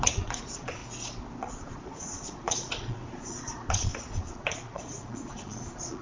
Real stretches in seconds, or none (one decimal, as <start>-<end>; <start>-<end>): 0.8-1.4